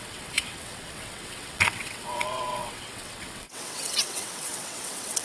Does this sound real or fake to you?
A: fake